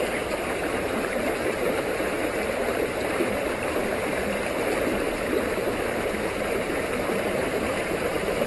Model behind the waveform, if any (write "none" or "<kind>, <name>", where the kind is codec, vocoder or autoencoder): vocoder, BigVGAN v2